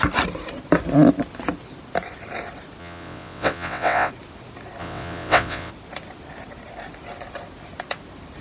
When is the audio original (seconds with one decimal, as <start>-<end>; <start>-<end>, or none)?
0.0-2.8; 4.1-4.8; 5.7-8.4